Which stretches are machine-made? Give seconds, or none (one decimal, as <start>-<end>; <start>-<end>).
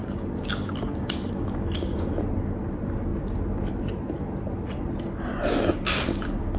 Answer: 0.0-2.1; 5.3-6.6